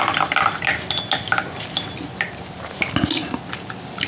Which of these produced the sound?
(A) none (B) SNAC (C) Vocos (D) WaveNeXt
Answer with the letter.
A